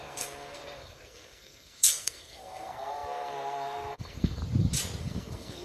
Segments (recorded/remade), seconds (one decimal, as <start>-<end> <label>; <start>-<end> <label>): 0.0-4.4 remade; 4.4-5.0 recorded; 5.0-5.6 remade